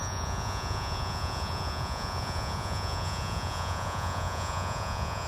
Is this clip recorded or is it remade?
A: remade